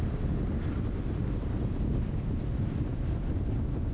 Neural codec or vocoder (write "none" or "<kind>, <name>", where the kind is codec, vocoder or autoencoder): none